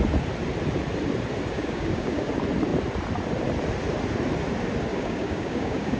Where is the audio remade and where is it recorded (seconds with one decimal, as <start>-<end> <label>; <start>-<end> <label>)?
0.0-1.5 recorded; 1.5-2.3 remade; 2.3-4.9 recorded; 4.9-6.0 remade